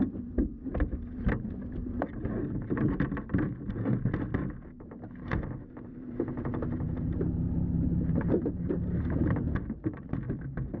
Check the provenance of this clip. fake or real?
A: fake